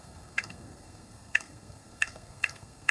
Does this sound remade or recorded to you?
remade